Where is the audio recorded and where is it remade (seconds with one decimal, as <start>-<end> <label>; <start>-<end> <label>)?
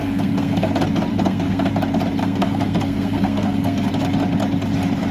0.0-0.7 remade; 0.7-1.1 recorded; 1.1-1.7 remade; 1.7-2.2 recorded; 2.2-3.9 remade; 3.9-5.1 recorded